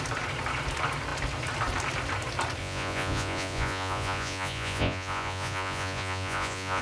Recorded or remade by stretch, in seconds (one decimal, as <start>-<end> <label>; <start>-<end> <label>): 0.0-2.6 recorded; 2.6-6.8 remade